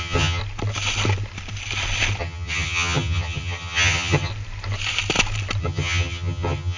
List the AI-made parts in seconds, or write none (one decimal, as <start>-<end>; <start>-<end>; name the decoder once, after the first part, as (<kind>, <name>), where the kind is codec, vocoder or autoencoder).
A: 0.0-0.4 (vocoder, HiFi-GAN); 2.2-4.3; 5.6-6.8